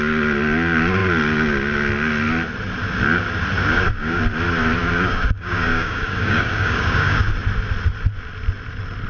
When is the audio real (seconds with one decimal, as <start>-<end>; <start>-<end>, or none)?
0.0-3.6; 4.2-4.8; 7.2-9.1